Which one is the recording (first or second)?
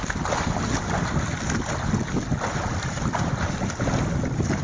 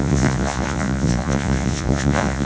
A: first